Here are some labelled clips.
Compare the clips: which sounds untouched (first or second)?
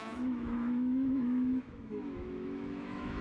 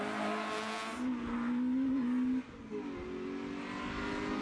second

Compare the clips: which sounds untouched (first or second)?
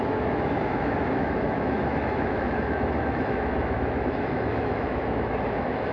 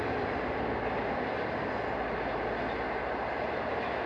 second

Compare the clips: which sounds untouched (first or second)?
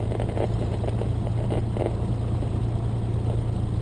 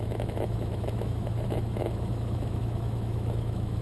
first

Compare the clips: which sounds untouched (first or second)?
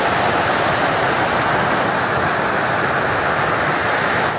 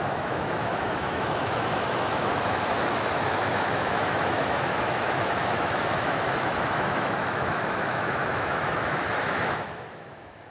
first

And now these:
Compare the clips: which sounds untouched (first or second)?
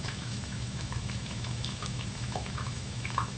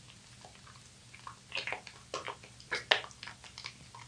second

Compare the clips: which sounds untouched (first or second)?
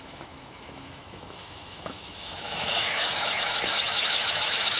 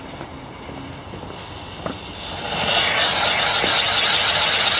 second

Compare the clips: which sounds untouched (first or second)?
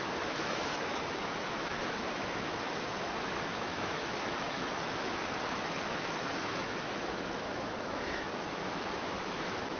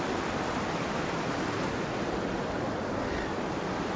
second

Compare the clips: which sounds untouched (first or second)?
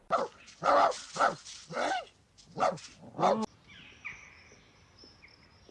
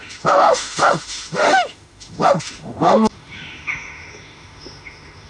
first